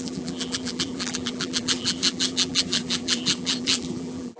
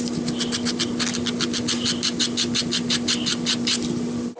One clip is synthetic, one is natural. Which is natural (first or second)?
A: second